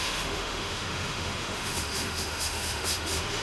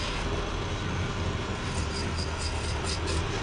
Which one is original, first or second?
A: second